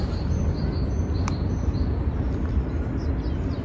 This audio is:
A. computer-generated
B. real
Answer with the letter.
B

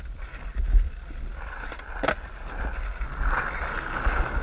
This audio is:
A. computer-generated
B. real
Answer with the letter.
B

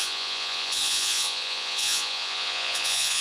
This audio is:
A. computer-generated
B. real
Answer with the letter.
A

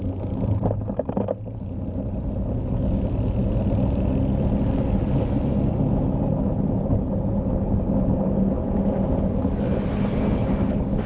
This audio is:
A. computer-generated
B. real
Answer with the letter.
B